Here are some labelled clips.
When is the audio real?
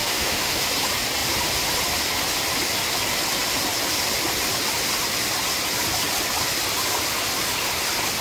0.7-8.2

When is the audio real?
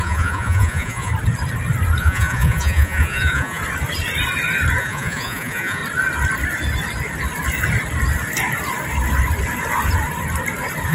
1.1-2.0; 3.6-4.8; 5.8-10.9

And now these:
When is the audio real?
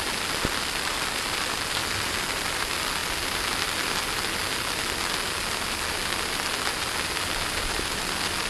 0.0-8.5